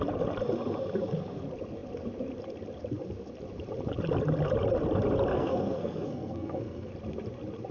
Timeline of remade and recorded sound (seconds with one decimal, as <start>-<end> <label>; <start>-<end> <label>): 0.0-5.3 recorded; 5.3-6.9 remade; 6.9-7.7 recorded